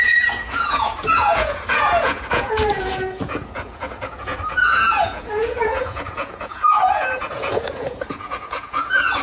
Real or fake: fake